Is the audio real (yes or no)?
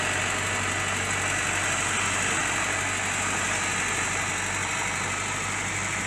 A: yes